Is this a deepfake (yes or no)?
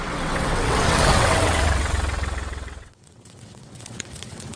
yes